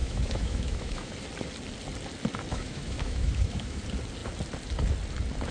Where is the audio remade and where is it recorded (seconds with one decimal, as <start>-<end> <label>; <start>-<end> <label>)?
0.0-1.1 remade; 1.1-2.5 recorded; 2.5-3.8 remade; 3.8-5.5 recorded